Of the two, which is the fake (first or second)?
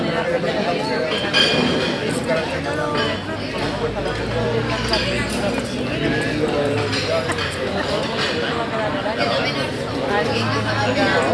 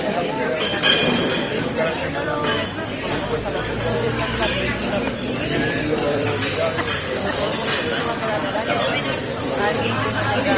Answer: second